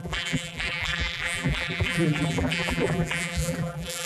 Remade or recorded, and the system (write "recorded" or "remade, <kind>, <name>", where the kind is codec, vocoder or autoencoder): remade, vocoder, BigVGAN v2